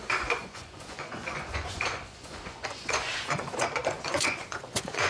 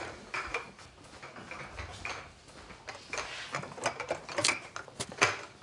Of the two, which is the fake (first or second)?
first